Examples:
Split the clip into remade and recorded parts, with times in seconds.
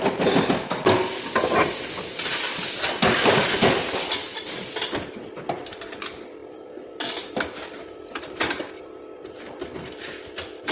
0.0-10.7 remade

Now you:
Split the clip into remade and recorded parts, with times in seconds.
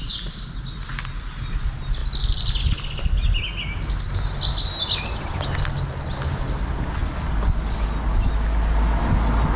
0.0-9.6 recorded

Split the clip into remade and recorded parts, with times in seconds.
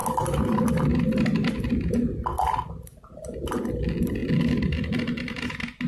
0.0-5.9 recorded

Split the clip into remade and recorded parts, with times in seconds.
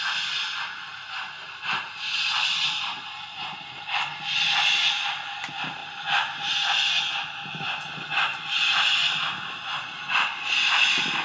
0.0-11.2 recorded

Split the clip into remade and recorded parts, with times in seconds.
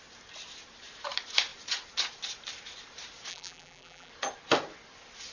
0.0-3.3 recorded; 3.3-4.1 remade; 4.1-5.3 recorded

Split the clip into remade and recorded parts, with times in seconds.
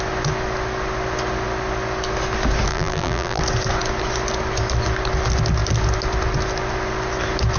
0.0-2.7 recorded; 2.7-3.4 remade; 3.4-7.6 recorded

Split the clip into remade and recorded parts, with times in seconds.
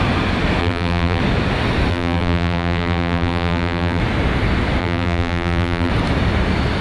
0.0-0.6 recorded; 0.6-1.2 remade; 1.2-1.9 recorded; 1.9-4.0 remade; 4.0-4.8 recorded; 4.8-5.9 remade; 5.9-6.8 recorded